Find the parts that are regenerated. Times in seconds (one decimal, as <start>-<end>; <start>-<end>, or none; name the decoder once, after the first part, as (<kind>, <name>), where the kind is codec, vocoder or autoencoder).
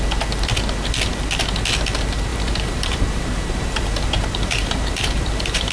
2.3-5.7 (vocoder, BigVGAN v2)